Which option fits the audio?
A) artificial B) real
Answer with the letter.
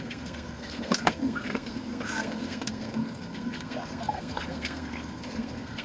A